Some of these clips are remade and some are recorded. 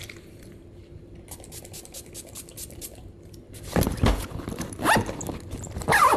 recorded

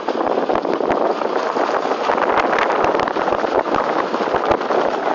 recorded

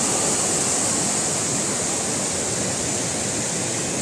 recorded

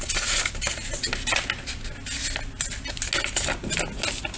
recorded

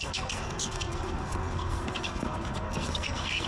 remade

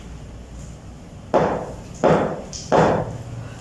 recorded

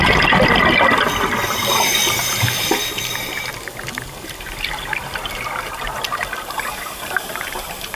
recorded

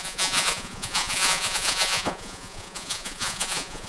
remade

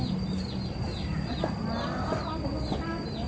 recorded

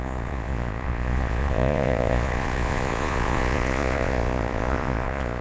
remade